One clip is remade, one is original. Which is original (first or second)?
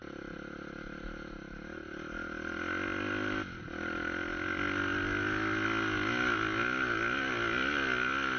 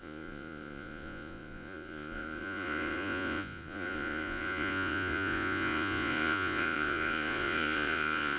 first